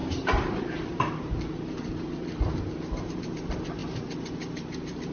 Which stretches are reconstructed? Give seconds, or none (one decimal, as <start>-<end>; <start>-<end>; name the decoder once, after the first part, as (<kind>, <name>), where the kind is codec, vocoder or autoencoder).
none